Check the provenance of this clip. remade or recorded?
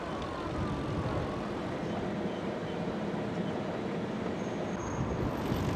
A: recorded